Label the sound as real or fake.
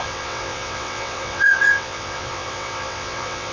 fake